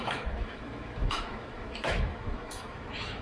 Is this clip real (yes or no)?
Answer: no